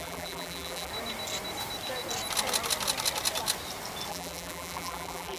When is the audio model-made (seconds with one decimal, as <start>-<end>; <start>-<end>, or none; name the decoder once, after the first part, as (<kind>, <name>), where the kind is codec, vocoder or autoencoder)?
0.0-0.9 (vocoder, BigVGAN v2); 4.1-5.4